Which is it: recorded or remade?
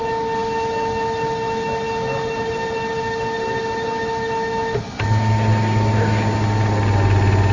recorded